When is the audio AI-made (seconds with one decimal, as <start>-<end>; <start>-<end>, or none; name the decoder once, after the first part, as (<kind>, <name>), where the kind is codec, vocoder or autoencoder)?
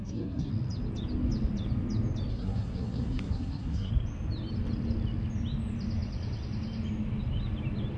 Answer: 0.0-0.5 (codec, SNAC); 2.3-3.9